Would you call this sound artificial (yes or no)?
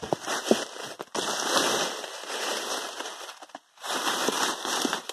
yes